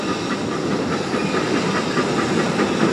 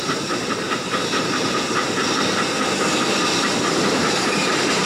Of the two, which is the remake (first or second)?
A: second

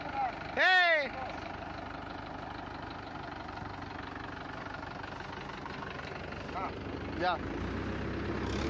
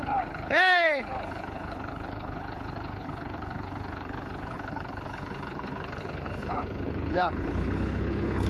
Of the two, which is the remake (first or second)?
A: second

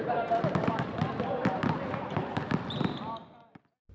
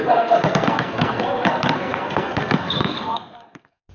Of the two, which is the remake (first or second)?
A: second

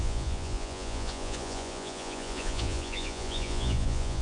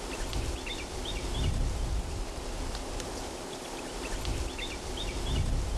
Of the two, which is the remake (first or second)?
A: first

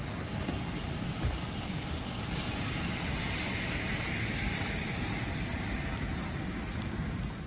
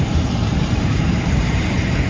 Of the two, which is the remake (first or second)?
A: second